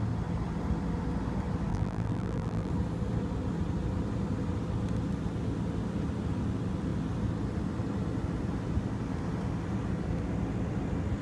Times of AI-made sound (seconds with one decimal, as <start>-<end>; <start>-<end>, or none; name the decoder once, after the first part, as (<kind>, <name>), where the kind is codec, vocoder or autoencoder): 1.7-2.7 (vocoder, BigVGAN v2)